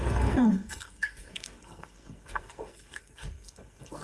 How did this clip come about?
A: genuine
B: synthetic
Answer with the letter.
B